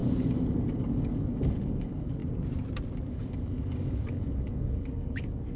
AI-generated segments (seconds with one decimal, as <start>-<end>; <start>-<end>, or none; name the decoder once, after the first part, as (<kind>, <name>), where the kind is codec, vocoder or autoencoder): 0.0-2.2 (codec, DAC); 3.1-5.6